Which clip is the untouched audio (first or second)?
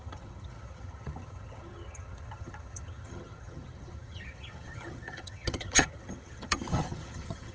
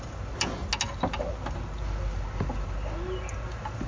second